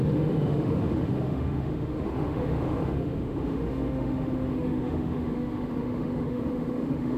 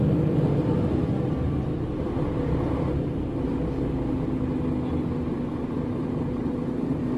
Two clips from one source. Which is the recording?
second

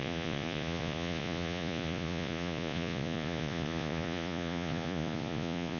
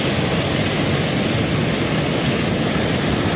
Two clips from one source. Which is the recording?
second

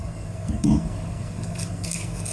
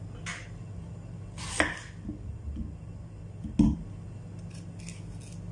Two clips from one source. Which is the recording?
second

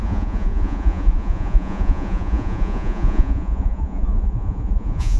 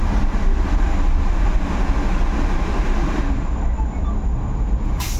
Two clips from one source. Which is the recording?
second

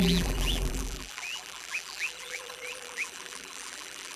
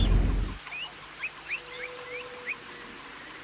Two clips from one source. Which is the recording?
second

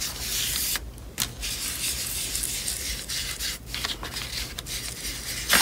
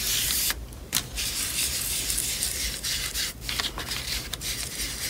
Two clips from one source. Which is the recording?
first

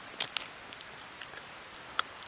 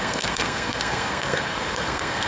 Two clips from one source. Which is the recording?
first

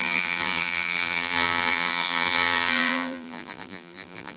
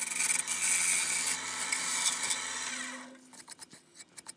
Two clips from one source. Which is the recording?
second